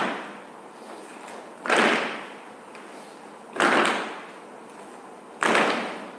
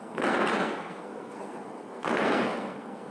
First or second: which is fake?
second